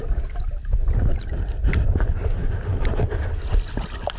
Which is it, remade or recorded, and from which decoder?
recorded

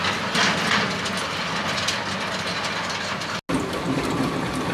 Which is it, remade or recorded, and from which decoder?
recorded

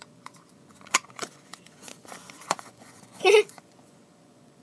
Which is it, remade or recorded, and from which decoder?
remade, vocoder, Vocos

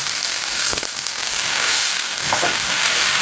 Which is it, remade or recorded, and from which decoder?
remade, codec, DAC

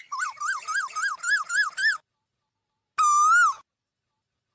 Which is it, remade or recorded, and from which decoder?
recorded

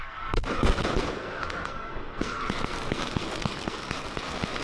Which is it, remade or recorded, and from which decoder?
remade, codec, SNAC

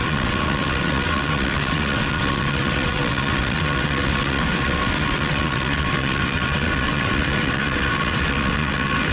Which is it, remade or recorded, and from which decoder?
remade, vocoder, WaveNeXt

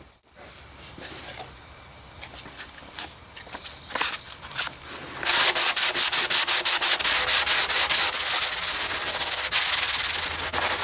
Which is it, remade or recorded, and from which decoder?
recorded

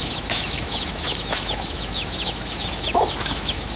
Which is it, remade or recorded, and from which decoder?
remade, autoencoder, DAC-VAE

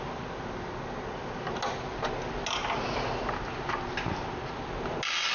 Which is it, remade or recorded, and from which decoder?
recorded